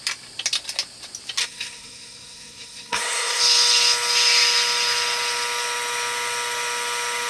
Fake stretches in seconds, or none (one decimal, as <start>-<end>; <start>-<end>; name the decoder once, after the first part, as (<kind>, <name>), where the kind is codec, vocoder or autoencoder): 1.4-3.4 (codec, SNAC)